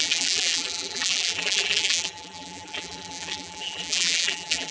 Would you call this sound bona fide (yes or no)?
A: no